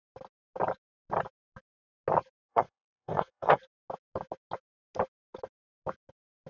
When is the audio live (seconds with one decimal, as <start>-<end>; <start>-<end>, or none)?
0.0-2.5; 3.6-6.5